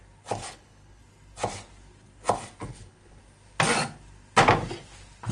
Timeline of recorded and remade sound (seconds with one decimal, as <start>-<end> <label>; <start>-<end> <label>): 0.0-0.4 recorded; 0.4-1.0 remade; 1.0-2.6 recorded; 2.6-3.2 remade; 3.2-5.3 recorded